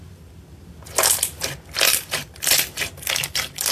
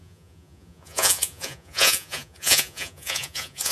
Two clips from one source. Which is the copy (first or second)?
second